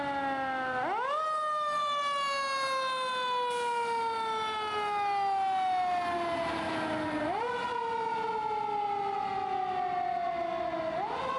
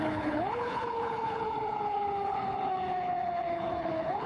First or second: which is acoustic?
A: first